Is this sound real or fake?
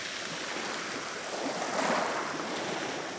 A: real